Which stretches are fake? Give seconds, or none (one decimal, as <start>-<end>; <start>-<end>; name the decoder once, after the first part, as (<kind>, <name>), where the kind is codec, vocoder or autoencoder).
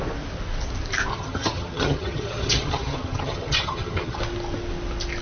1.1-4.2 (vocoder, HiFi-GAN)